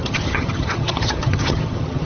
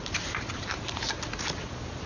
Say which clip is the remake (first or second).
first